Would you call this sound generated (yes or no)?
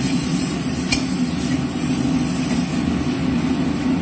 no